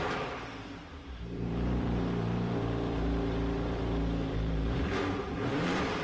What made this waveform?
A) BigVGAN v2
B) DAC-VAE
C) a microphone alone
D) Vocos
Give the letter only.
A